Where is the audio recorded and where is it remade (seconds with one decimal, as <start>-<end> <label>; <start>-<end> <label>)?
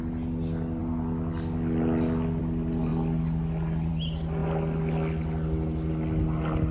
0.0-6.7 recorded